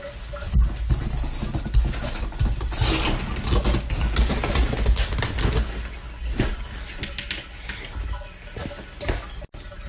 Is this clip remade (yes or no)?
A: no